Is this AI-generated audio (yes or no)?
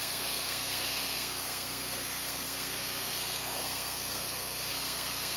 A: yes